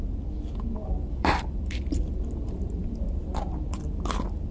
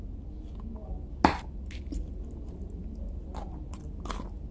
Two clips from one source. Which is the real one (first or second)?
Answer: second